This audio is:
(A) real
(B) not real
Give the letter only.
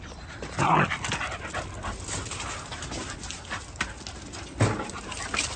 A